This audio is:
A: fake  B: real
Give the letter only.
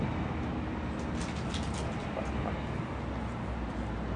B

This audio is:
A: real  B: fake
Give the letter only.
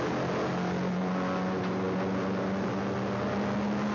A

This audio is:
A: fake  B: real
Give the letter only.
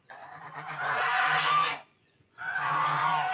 A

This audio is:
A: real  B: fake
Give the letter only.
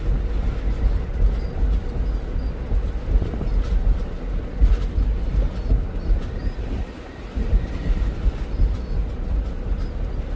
A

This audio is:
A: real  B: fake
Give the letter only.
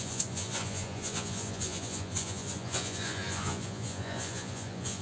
B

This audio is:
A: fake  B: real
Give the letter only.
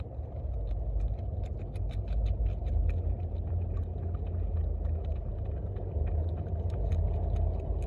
B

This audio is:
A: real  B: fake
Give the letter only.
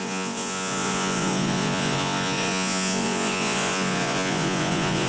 B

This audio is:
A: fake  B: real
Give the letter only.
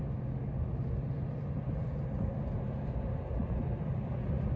B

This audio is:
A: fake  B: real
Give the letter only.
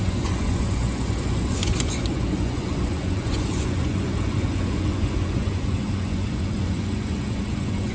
A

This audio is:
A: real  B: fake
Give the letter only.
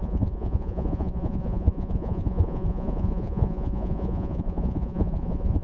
B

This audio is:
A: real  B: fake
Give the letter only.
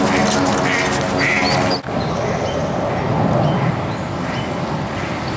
A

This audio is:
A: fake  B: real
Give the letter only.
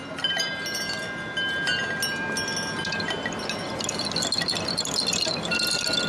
B